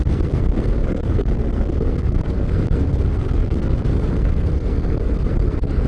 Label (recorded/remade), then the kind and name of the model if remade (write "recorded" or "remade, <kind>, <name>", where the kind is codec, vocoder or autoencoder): remade, codec, SNAC